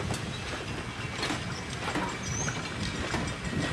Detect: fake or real real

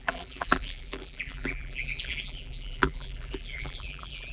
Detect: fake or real fake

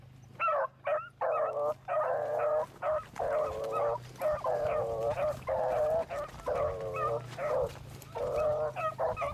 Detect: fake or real real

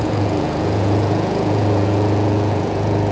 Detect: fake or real fake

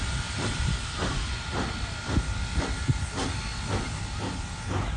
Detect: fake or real real